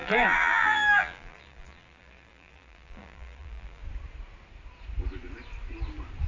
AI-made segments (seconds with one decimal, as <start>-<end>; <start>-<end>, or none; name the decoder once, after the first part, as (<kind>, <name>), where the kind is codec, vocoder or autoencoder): 0.0-3.8 (vocoder, BigVGAN v2)